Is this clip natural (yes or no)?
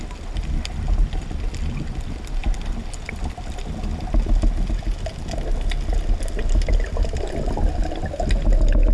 yes